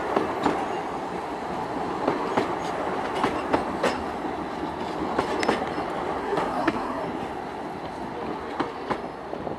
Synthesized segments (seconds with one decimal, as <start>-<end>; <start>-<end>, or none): 6.2-7.0